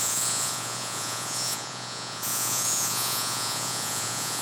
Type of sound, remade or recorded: remade